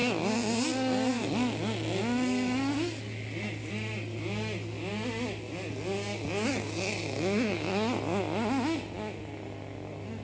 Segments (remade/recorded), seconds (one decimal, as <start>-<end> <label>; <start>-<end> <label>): 0.0-10.2 recorded